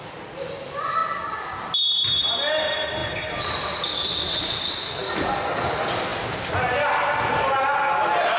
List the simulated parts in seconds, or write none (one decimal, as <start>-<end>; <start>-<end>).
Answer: none